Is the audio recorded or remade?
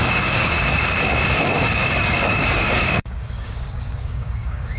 remade